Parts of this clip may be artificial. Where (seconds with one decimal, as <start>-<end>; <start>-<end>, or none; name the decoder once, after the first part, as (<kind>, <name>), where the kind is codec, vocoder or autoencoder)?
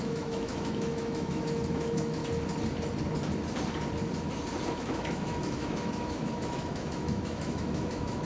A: 0.0-2.2 (autoencoder, DAC-VAE); 4.8-8.3